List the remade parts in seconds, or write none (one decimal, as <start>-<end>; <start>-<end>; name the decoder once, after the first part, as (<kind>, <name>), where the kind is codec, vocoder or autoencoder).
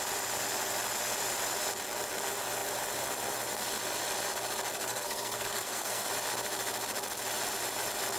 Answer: 4.7-6.1 (codec, SNAC)